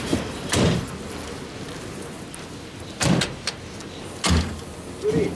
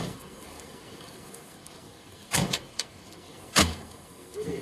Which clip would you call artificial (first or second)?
second